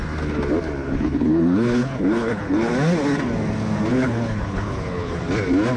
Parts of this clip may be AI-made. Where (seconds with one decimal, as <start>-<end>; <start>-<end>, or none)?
0.8-2.7; 3.9-5.2